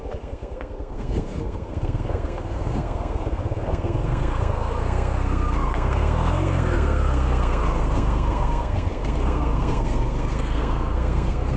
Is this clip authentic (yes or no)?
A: no